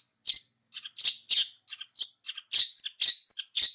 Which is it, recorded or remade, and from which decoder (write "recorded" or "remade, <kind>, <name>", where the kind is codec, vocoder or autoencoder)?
recorded